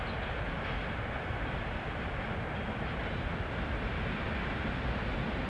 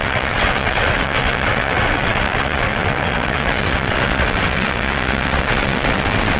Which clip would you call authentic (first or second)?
first